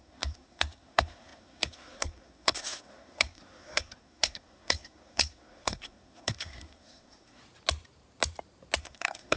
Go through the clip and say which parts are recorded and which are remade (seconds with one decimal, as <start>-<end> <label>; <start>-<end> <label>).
0.0-7.4 remade; 7.4-8.8 recorded; 8.8-9.4 remade